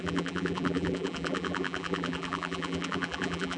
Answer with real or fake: fake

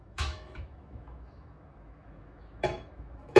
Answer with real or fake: fake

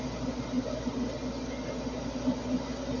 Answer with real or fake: real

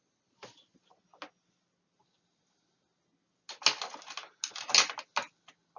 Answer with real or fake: real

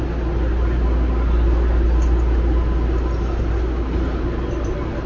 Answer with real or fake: real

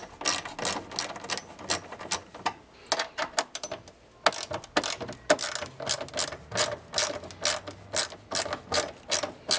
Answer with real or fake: real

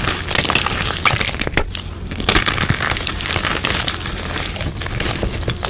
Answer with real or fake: real